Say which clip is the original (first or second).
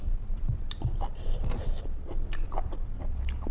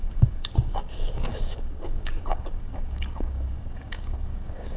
first